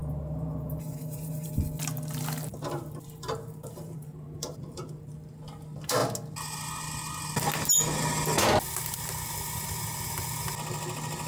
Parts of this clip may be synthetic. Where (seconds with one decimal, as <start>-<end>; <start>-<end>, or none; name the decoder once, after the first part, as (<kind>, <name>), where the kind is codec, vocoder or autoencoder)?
0.0-1.6 (vocoder, BigVGAN v2); 2.5-5.1